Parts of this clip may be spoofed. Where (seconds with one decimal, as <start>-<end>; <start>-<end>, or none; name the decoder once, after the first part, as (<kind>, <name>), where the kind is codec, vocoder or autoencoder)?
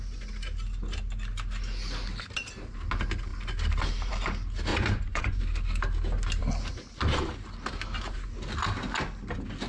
4.7-5.4 (vocoder, Vocos)